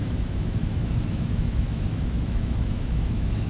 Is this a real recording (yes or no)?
no